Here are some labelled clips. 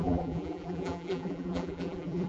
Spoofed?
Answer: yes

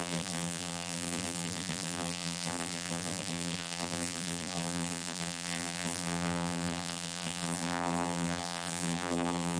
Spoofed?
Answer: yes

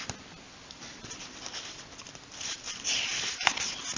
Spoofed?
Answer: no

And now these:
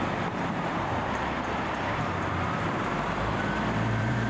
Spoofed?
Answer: yes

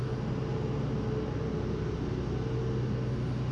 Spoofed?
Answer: no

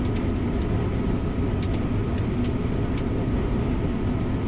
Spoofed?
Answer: no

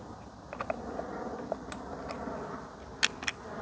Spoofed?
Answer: no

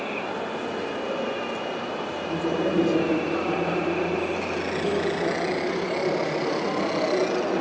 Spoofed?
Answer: no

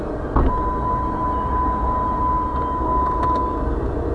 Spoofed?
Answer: no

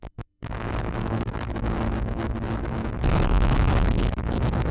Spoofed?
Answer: yes